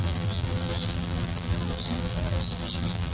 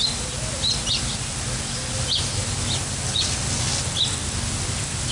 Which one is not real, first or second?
first